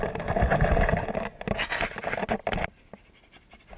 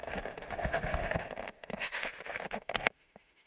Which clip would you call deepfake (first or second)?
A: second